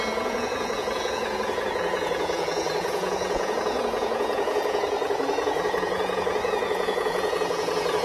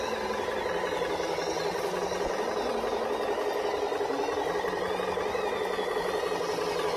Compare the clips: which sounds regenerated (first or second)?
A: first